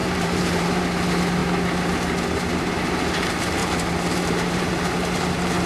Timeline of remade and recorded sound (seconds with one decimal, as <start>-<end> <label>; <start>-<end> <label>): 0.0-0.8 remade; 0.8-3.6 recorded; 3.6-4.7 remade; 4.7-5.7 recorded